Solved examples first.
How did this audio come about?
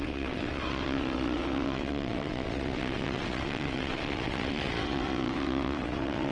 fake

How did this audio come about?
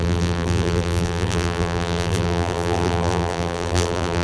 fake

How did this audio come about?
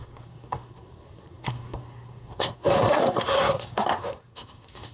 fake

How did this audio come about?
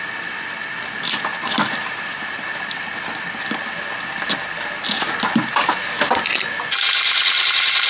real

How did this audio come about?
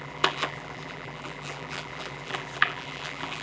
fake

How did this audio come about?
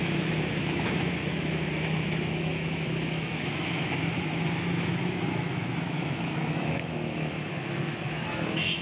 fake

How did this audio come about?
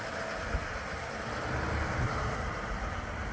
real